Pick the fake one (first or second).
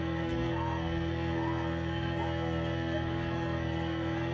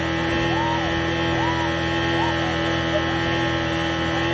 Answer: first